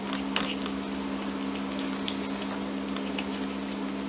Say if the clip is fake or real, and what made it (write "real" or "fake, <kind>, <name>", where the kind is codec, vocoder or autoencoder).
real